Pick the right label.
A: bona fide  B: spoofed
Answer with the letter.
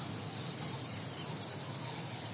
A